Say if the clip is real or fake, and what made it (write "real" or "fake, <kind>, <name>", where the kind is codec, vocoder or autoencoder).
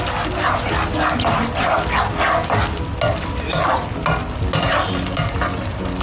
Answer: real